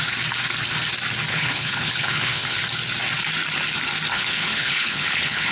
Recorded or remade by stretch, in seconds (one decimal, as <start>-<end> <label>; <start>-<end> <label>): 0.0-1.3 recorded; 1.3-2.6 remade; 2.6-4.1 recorded; 4.1-5.5 remade